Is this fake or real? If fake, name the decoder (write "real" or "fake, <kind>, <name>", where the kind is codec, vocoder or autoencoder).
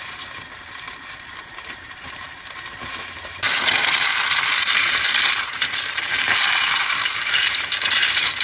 fake, vocoder, BigVGAN v2